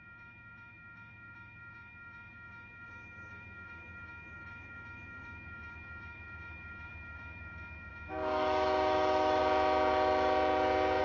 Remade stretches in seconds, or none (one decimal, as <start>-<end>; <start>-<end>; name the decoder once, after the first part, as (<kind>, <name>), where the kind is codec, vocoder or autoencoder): 0.0-9.4 (autoencoder, DAC-VAE)